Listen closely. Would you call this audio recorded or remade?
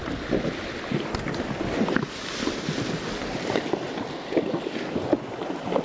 recorded